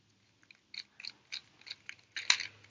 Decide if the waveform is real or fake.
real